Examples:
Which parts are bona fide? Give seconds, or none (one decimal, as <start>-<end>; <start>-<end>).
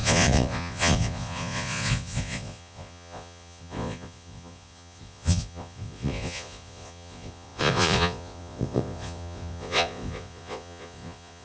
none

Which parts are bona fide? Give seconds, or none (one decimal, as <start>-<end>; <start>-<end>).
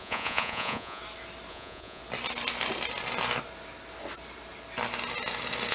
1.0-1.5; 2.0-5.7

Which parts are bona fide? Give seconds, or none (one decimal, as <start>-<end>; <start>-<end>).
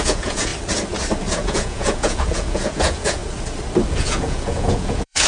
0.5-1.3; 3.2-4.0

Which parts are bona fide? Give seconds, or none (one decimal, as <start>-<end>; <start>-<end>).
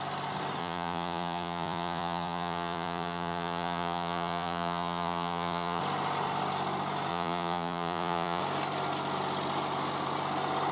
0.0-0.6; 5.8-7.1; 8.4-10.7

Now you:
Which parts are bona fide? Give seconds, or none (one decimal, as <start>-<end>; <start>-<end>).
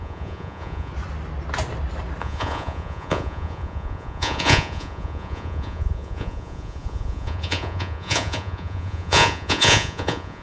0.9-2.2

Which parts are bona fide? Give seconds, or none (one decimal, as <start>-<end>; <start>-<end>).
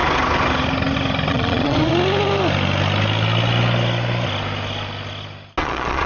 0.0-1.3; 1.9-5.6